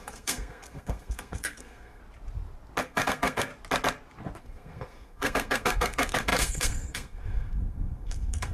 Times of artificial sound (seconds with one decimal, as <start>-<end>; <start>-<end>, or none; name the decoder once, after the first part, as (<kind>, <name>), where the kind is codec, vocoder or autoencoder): 0.0-2.0 (codec, SNAC); 2.8-3.5; 4.4-8.5